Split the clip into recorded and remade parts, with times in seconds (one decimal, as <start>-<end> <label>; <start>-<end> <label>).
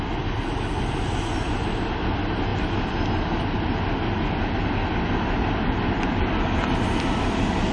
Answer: 0.0-7.7 recorded